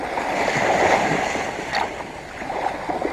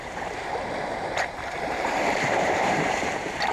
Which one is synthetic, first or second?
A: second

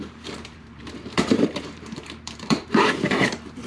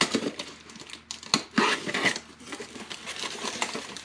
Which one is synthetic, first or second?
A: first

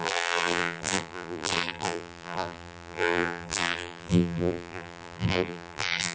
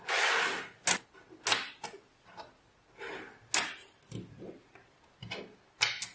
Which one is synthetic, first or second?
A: first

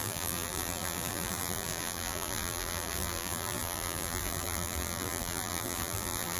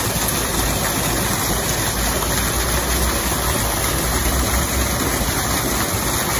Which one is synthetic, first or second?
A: first